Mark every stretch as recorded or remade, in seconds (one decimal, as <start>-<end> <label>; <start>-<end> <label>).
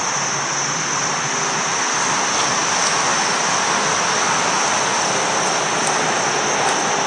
0.0-7.1 recorded